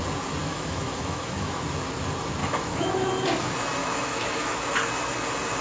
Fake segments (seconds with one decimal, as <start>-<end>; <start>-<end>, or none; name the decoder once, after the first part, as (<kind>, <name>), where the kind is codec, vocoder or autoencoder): 0.4-1.6 (autoencoder, DAC-VAE); 2.4-2.9; 3.8-4.6

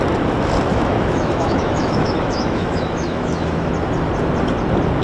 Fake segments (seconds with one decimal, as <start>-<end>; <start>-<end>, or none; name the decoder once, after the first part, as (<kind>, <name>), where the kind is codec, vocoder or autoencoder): 0.7-3.7 (autoencoder, DAC-VAE)

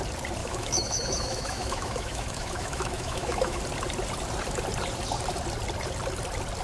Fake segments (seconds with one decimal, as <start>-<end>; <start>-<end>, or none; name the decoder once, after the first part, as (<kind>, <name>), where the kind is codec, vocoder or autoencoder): 0.4-3.6 (autoencoder, DAC-VAE)

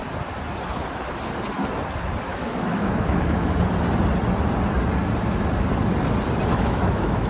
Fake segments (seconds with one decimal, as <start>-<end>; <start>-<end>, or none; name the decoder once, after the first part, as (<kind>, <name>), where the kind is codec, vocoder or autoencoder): 2.3-3.5 (autoencoder, DAC-VAE); 6.5-7.3

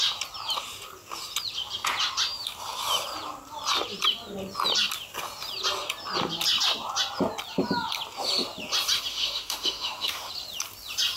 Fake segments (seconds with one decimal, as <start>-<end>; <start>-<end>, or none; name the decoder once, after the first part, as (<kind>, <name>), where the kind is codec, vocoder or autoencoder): 9.1-10.3 (autoencoder, DAC-VAE)

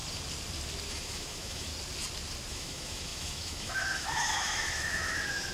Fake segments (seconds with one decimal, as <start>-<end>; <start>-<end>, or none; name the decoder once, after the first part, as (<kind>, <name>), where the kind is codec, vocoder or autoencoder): 0.9-1.7 (autoencoder, DAC-VAE); 2.5-5.5

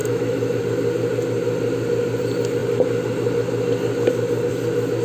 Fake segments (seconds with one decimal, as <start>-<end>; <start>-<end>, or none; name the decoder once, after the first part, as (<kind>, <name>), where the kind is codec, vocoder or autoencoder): 0.0-0.6 (autoencoder, DAC-VAE)

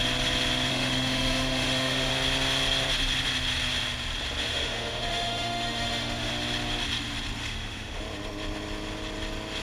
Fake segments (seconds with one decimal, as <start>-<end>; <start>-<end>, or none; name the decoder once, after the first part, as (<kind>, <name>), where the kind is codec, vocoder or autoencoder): 0.7-2.1 (autoencoder, DAC-VAE); 4.5-6.3; 7.4-8.0